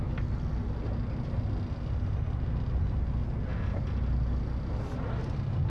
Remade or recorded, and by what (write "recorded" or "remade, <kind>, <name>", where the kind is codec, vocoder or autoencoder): recorded